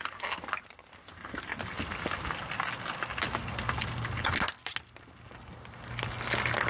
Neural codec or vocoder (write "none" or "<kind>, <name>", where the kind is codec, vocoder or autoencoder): none